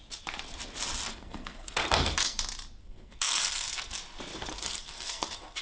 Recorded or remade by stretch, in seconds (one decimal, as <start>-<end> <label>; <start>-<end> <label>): 0.0-1.1 recorded; 1.1-2.4 remade; 2.4-2.8 recorded; 2.8-3.9 remade; 3.9-4.5 recorded; 4.5-5.6 remade